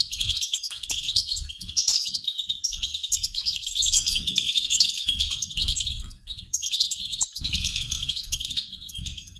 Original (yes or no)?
no